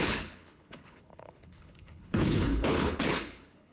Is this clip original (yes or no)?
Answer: no